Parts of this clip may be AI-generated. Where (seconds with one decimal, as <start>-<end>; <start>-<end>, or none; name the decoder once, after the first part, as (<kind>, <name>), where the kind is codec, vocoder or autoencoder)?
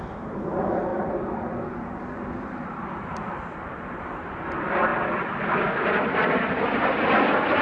none